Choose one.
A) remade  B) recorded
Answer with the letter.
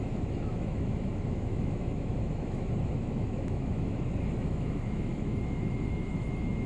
A